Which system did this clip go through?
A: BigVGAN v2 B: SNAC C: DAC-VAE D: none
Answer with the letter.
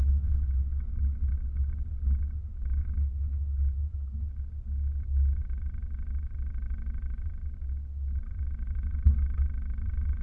D